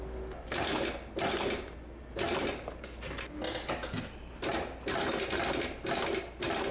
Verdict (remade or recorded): recorded